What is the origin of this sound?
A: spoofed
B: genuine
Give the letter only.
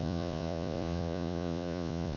A